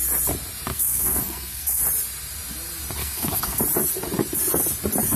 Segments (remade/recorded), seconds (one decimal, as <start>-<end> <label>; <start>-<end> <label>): 0.0-0.7 recorded; 0.7-1.8 remade; 1.8-3.0 recorded; 3.0-3.6 remade; 3.6-5.2 recorded